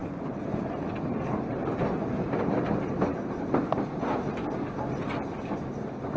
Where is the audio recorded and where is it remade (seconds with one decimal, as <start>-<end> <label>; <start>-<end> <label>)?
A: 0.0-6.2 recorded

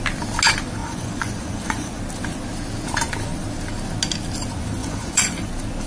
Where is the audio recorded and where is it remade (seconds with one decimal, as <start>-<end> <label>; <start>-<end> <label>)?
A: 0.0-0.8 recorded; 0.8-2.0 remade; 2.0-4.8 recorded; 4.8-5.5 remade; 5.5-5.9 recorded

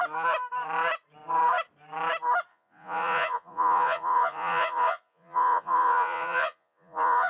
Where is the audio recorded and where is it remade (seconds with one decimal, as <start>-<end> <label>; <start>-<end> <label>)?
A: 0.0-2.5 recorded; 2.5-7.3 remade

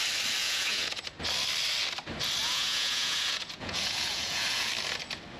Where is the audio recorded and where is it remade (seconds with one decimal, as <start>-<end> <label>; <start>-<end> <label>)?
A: 0.0-0.4 recorded; 0.4-1.0 remade; 1.0-2.4 recorded; 2.4-4.7 remade; 4.7-5.4 recorded

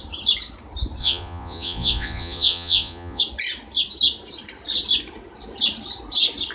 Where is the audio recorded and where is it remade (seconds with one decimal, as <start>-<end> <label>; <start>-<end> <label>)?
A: 0.0-1.0 recorded; 1.0-3.2 remade; 3.2-6.5 recorded

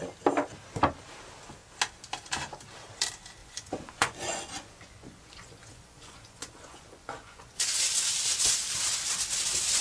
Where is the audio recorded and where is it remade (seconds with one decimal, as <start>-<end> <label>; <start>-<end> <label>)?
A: 0.0-3.4 recorded; 3.4-7.8 remade; 7.8-9.8 recorded